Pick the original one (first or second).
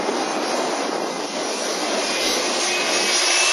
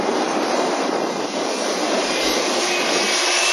first